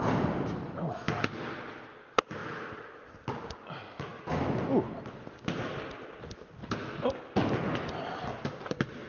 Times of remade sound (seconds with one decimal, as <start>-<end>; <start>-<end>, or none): 2.4-3.3